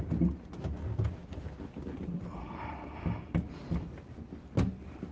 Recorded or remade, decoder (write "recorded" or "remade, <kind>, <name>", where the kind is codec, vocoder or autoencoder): recorded